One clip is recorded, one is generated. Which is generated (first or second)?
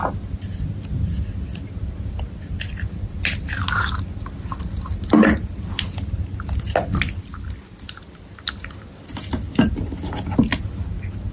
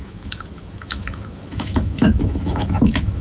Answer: second